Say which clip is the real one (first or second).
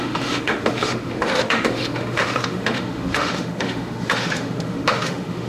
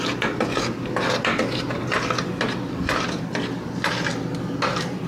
second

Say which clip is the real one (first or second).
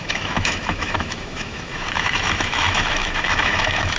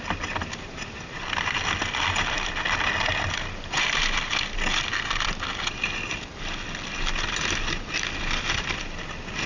second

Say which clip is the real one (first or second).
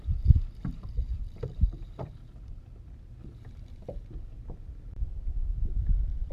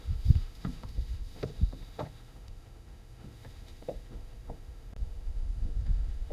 first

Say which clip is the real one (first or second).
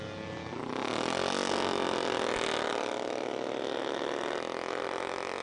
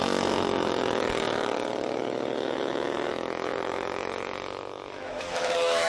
first